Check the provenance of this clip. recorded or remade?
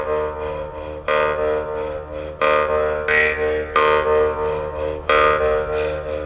recorded